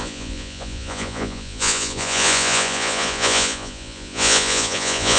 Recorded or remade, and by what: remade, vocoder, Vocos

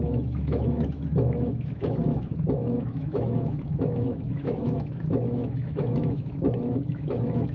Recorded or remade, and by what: remade, autoencoder, DAC-VAE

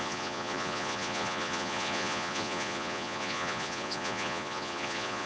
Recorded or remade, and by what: remade, vocoder, Vocos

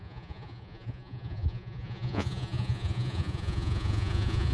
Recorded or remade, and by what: remade, vocoder, Vocos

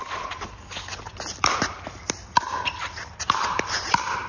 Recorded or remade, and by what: recorded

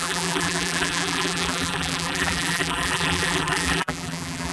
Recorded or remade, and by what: remade, vocoder, BigVGAN v2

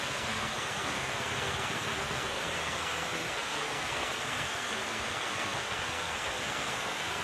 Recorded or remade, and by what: remade, codec, SNAC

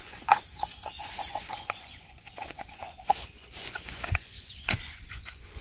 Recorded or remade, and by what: remade, vocoder, Vocos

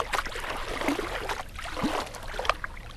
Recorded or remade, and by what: recorded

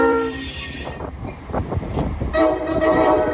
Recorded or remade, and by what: remade, vocoder, BigVGAN v2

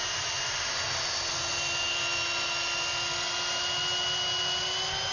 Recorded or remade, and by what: recorded